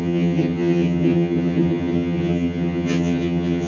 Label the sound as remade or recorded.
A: remade